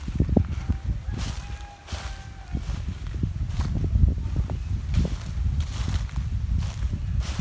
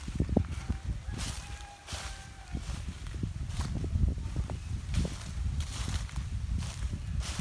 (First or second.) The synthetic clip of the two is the second